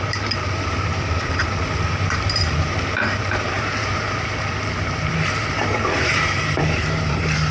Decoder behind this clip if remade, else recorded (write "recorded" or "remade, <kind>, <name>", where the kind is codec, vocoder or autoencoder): remade, vocoder, BigVGAN v2